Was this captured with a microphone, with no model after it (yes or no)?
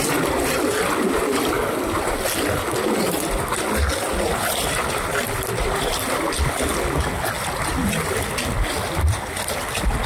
yes